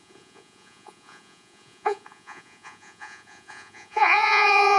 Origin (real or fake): fake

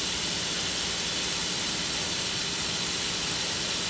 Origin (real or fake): real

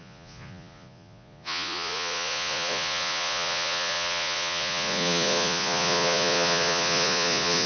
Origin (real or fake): fake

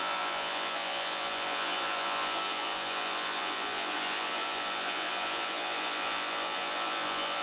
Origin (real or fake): fake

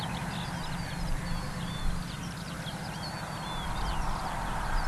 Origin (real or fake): real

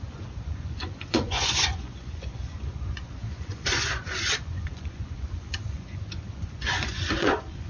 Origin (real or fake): fake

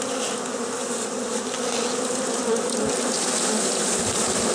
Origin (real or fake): real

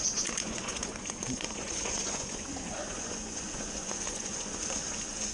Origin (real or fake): fake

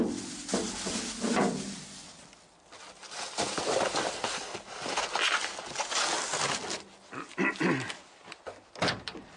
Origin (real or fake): real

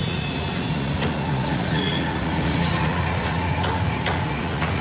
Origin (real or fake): fake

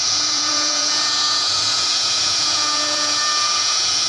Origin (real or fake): fake